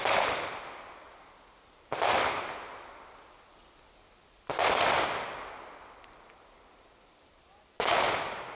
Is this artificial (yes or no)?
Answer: no